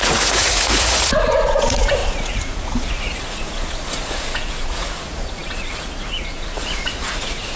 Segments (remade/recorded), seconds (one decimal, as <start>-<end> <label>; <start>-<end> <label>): 0.0-7.6 remade

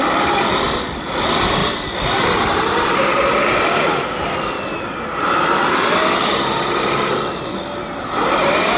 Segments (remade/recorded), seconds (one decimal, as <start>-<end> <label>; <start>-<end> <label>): 0.0-8.8 recorded

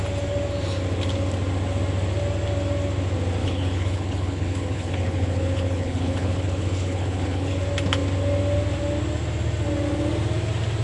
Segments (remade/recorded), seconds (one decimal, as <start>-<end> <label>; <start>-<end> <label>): 0.0-3.4 recorded; 3.4-7.6 remade; 7.6-10.8 recorded

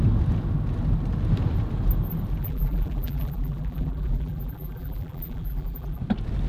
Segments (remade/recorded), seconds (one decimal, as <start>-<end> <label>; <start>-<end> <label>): 0.0-2.4 recorded; 2.4-6.0 remade; 6.0-6.5 recorded

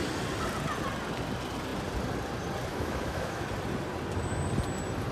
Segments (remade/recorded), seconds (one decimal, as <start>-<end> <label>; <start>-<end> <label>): 0.0-2.7 recorded; 2.7-3.5 remade; 3.5-5.1 recorded